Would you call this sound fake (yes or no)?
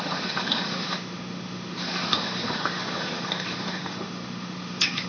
yes